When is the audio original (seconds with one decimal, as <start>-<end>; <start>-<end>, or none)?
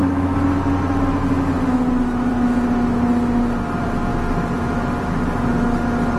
0.0-6.2